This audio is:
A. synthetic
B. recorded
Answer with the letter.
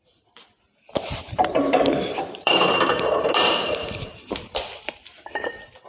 A